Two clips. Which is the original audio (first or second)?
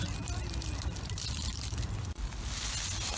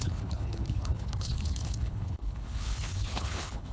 first